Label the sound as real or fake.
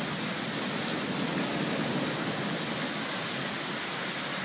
real